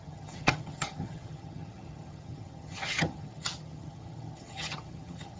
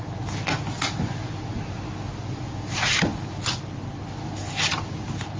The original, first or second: second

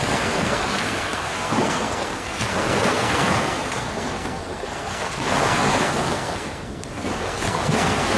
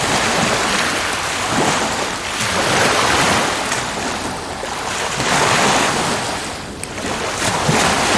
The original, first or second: second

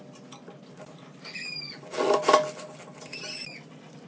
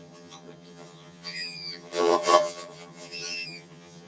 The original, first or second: first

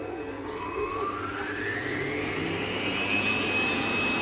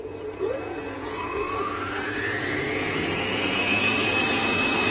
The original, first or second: first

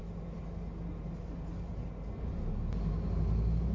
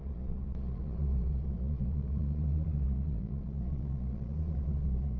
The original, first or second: first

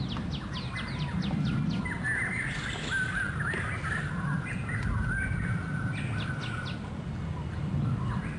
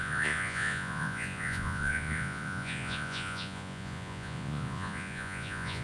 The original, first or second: first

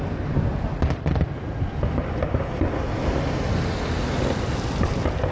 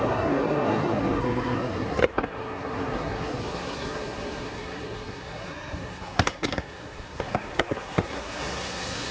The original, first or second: first